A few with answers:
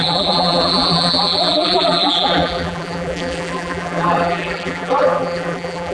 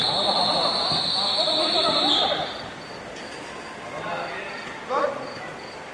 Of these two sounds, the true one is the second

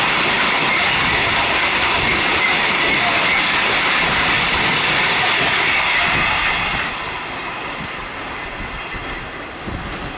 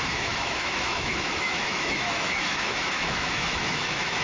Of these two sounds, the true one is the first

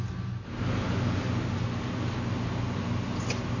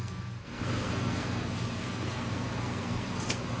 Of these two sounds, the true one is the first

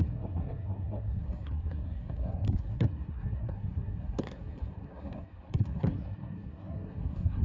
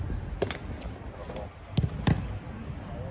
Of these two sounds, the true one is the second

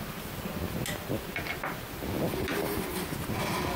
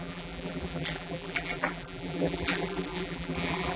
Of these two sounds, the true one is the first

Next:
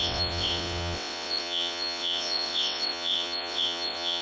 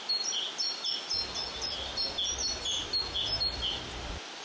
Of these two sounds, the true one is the second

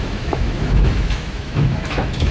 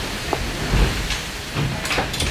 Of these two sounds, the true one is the second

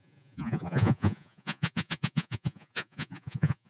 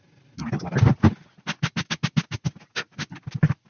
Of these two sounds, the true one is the second